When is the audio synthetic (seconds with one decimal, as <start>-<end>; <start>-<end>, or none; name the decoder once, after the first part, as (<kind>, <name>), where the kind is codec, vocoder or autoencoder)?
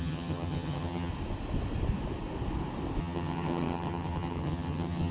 0.0-1.1 (vocoder, HiFi-GAN); 3.0-5.1